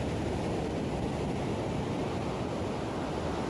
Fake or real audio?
real